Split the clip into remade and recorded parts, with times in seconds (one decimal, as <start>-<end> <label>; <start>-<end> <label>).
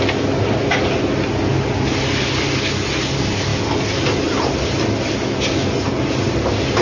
0.0-6.8 recorded